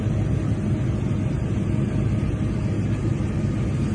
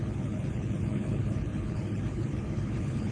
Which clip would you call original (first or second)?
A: first